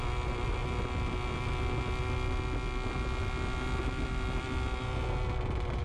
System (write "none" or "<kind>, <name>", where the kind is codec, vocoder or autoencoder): none